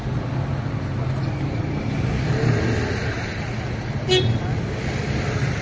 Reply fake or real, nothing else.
real